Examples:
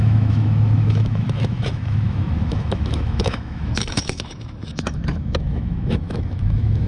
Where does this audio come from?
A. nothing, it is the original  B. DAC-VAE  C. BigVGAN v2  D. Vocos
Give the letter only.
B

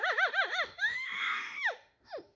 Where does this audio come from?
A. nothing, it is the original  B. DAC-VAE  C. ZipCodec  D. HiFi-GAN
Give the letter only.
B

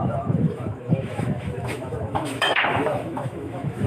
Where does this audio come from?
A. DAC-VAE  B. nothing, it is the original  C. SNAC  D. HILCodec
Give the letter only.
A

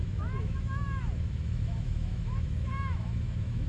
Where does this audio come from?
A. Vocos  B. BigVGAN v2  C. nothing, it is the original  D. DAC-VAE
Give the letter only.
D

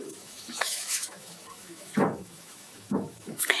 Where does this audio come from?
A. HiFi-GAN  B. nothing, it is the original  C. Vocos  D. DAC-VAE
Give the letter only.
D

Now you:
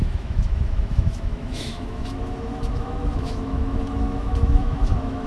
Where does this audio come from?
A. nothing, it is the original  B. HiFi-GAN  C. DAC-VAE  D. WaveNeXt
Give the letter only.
C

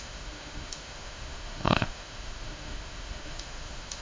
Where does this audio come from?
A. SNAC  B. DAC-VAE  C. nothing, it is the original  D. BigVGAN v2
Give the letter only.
B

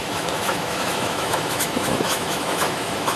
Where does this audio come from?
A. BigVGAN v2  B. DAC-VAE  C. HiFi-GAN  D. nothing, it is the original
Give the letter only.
B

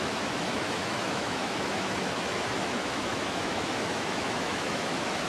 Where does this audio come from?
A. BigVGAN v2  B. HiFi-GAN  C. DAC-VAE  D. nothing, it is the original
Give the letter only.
C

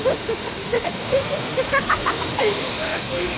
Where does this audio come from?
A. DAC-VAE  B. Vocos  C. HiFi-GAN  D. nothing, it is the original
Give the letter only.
A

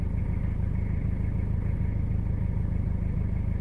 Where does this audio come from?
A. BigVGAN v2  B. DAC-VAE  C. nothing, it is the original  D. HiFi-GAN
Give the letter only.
C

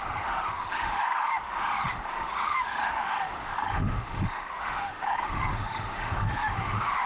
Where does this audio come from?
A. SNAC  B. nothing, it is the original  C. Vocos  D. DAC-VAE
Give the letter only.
D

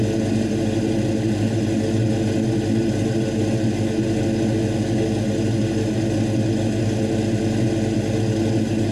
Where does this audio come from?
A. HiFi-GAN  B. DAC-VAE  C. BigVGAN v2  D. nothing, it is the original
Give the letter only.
D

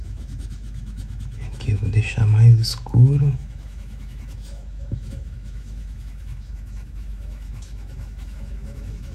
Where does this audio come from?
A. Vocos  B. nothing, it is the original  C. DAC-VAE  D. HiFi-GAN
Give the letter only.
C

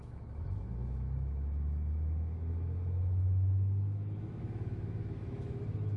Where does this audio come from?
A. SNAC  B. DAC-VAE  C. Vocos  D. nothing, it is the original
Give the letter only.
B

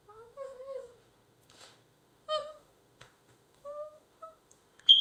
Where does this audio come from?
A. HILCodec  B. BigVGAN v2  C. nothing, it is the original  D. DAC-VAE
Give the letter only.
D